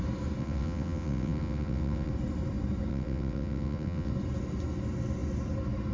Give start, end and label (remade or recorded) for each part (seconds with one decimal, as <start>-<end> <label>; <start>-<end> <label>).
0.0-0.4 recorded; 0.4-2.1 remade; 2.1-2.9 recorded; 2.9-4.1 remade; 4.1-5.9 recorded